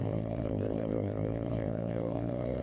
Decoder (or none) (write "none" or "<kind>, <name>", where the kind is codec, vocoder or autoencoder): codec, SNAC